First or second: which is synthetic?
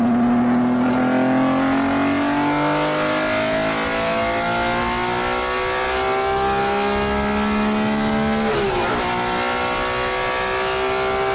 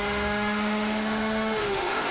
second